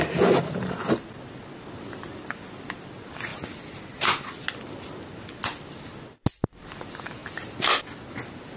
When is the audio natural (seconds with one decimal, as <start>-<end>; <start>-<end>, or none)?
0.0-8.6

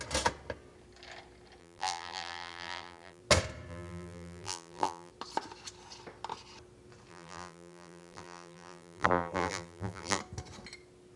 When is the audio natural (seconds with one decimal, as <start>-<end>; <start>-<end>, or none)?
0.0-1.6; 3.2-3.7; 5.1-7.1; 10.2-11.2

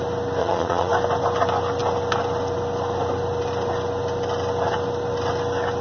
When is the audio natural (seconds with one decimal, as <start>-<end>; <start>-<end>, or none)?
0.0-0.4; 0.9-5.8

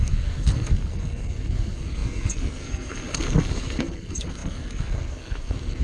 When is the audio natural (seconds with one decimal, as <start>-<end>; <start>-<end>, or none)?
none

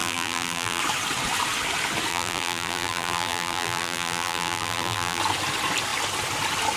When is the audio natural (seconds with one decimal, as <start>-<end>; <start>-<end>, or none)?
0.8-2.1; 5.2-6.8

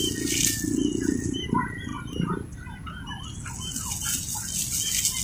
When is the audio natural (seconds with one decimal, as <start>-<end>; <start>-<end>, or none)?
0.0-5.2

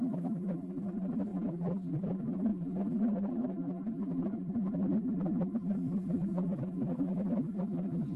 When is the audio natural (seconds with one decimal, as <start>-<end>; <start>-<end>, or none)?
none